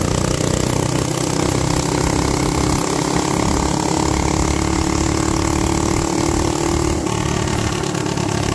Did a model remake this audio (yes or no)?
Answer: no